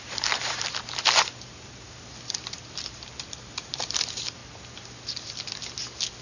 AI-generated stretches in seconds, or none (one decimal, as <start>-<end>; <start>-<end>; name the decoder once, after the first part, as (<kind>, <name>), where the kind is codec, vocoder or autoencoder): 0.0-4.4 (vocoder, BigVGAN v2)

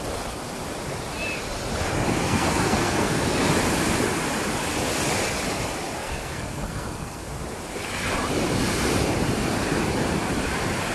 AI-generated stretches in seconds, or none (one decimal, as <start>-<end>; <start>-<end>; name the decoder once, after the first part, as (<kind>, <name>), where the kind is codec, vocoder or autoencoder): 2.2-3.5 (codec, SNAC); 6.0-7.3

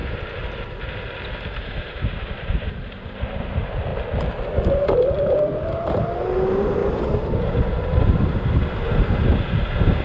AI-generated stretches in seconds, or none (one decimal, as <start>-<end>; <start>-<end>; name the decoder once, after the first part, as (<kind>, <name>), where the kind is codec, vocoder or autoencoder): 1.7-3.9 (vocoder, BigVGAN v2); 6.0-10.0

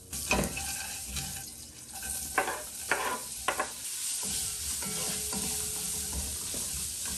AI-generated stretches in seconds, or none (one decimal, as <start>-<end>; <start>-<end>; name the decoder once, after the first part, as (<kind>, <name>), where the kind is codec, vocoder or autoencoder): none

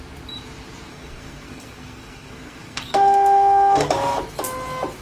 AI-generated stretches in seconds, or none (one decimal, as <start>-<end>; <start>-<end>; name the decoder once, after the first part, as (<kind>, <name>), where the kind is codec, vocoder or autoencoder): 0.9-3.9 (codec, SNAC)

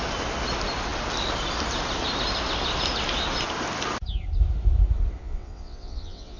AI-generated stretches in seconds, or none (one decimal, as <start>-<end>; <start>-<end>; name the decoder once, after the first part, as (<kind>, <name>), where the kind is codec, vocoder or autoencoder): 5.2-6.4 (vocoder, WaveNeXt)

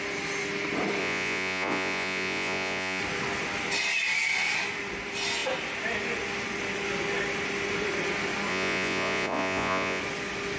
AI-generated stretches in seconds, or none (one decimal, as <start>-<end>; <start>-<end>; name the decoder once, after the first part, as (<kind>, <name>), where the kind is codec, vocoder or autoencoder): 1.0-3.0 (vocoder, Vocos); 8.5-10.0